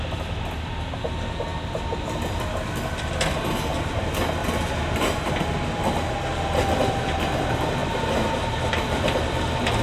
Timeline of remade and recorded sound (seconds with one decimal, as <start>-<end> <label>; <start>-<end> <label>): 0.0-4.4 recorded; 4.4-5.3 remade; 5.3-9.8 recorded